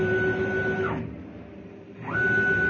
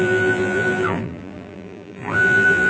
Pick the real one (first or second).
first